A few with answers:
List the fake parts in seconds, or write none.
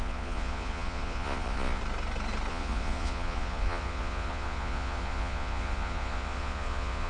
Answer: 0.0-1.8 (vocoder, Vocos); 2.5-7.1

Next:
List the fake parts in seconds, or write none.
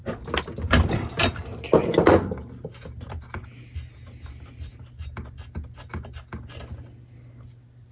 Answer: none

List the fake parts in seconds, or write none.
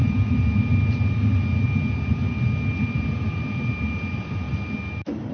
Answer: none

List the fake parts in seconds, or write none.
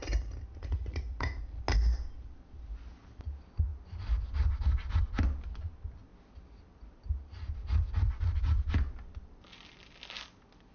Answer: 0.6-1.4 (vocoder, Vocos)